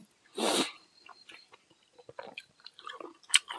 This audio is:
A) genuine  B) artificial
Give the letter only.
B